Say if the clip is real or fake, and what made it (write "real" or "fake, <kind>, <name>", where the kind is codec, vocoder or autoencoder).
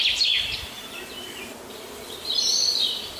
fake, vocoder, BigVGAN v2